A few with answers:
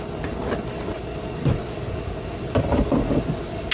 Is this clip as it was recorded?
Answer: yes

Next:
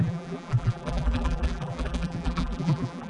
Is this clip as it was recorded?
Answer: no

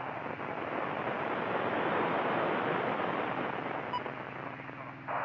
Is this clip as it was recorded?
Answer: yes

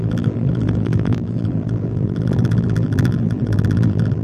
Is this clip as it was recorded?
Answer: no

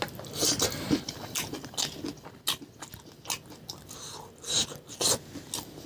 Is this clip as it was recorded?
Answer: yes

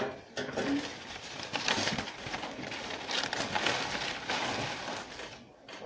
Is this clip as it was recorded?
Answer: yes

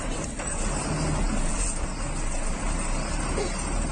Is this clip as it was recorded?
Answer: yes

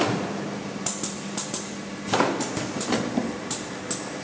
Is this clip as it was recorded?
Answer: yes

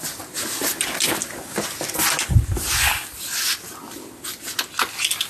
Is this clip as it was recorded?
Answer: yes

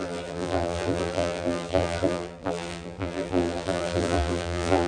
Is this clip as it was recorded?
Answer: no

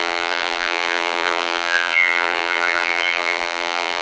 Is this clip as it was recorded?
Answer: no